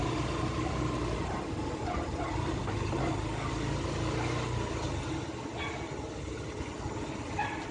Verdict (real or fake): real